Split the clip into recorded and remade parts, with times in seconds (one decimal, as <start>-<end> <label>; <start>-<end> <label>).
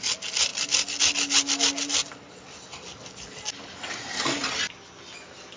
0.0-5.6 recorded